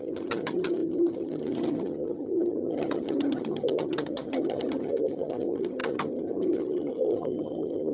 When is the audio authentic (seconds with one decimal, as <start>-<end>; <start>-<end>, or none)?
none